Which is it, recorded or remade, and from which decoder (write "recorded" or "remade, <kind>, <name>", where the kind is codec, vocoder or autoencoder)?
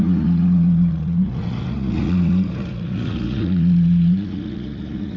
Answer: remade, vocoder, Vocos